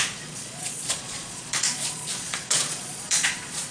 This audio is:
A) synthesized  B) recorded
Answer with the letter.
A